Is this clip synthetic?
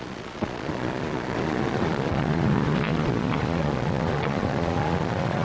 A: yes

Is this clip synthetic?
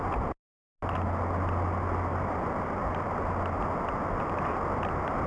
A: no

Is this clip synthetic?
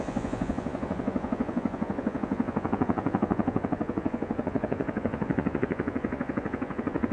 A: yes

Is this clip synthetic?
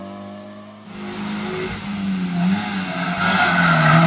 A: no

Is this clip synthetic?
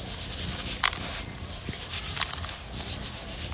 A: no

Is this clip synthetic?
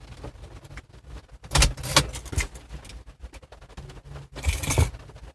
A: no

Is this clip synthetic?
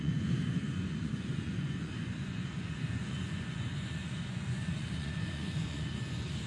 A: yes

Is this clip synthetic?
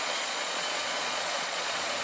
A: yes